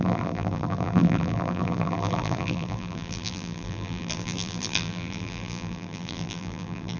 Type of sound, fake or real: fake